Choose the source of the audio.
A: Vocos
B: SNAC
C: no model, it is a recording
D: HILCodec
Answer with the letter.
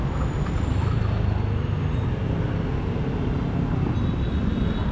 C